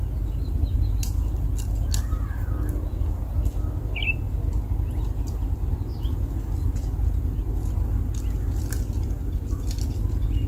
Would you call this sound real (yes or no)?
yes